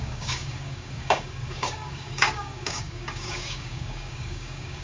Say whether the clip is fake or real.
fake